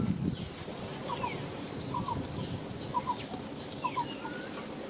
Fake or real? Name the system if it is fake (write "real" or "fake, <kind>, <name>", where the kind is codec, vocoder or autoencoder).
real